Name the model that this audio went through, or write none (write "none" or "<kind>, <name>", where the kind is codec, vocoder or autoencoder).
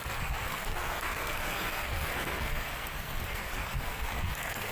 codec, SNAC